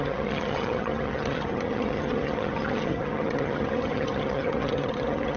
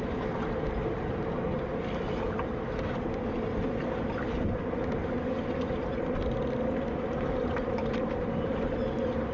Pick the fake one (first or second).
first